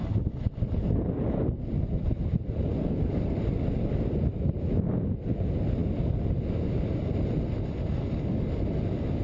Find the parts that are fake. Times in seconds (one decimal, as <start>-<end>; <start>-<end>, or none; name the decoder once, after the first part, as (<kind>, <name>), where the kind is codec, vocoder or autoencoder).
none